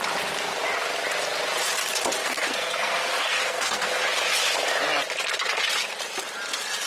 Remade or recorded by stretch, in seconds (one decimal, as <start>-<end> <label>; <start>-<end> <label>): 0.0-2.2 recorded; 2.2-4.0 remade; 4.0-6.9 recorded